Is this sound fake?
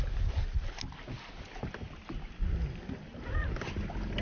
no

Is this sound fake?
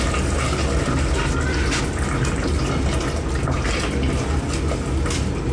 no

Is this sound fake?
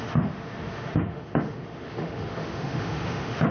yes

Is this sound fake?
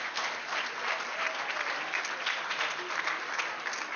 no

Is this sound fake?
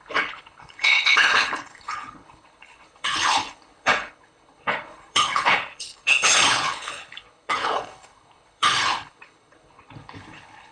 yes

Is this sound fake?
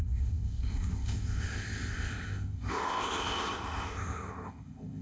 yes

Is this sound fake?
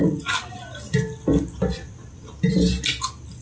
no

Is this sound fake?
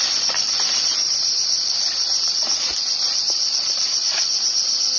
no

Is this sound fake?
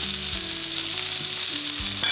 no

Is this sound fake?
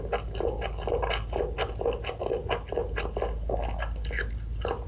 no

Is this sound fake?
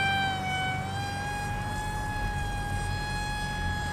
no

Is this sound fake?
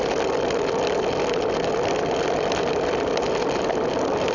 no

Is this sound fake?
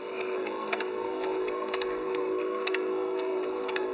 yes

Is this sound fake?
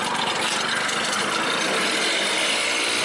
no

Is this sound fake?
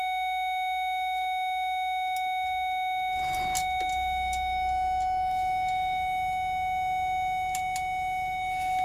no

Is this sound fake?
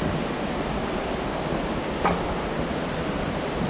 no